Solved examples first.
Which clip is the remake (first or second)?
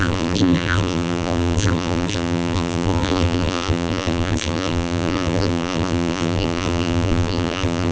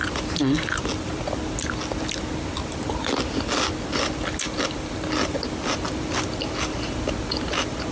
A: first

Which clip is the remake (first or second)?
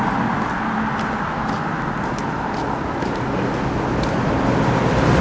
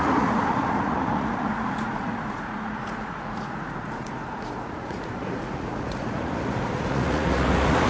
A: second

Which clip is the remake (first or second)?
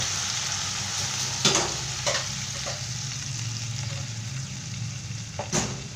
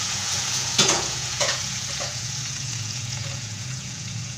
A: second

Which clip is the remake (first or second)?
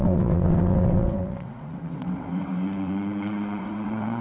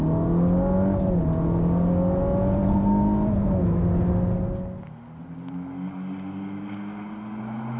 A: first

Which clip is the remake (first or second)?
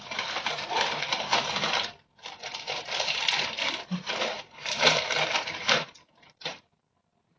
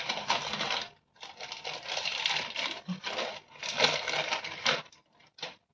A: first